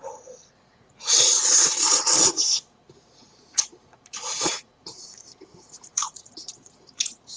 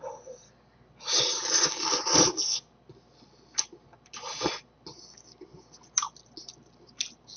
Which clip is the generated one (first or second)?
first